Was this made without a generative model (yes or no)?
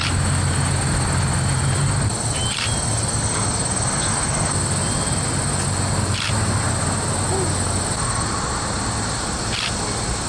yes